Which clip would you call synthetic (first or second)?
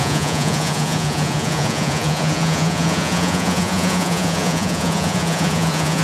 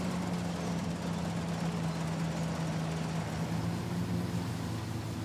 first